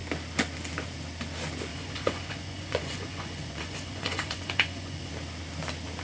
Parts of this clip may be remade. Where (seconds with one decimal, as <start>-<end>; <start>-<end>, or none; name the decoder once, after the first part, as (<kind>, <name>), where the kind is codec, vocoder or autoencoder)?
1.7-5.1 (vocoder, Vocos)